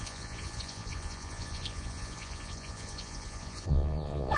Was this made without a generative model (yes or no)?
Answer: no